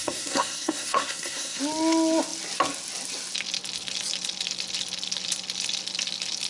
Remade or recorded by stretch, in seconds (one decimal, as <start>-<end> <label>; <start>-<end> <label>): 0.0-1.6 remade; 1.6-6.5 recorded